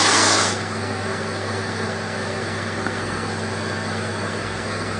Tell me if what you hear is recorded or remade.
remade